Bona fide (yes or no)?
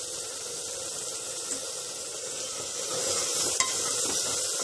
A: yes